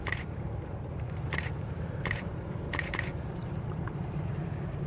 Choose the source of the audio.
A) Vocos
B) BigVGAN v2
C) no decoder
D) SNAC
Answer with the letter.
B